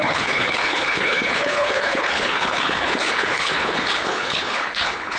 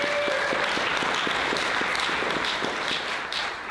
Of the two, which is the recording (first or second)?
second